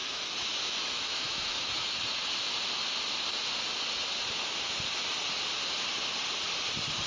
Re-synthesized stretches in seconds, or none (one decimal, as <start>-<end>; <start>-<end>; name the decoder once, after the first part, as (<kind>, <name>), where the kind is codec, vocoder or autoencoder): 0.0-1.9 (autoencoder, DAC-VAE)